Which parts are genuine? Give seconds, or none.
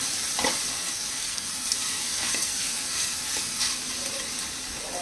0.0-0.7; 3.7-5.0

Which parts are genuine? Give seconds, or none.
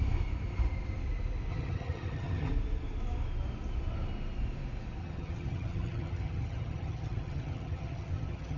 0.0-1.5; 2.5-5.0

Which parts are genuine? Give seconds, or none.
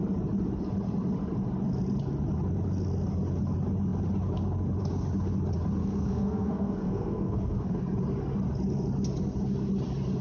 0.0-5.8; 7.8-10.2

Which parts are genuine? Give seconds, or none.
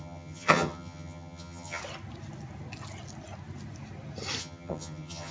1.8-4.4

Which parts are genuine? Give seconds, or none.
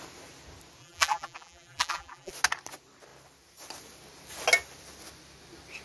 0.0-0.8; 2.3-5.8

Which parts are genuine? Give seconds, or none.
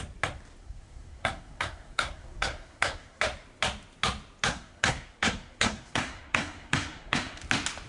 0.0-0.6; 3.2-4.5; 7.4-7.9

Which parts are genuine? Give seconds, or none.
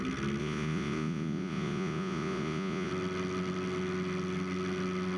0.0-0.4; 2.9-5.2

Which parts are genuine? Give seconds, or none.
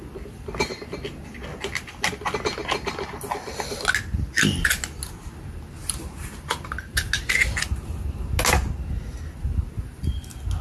0.0-5.8; 7.1-10.6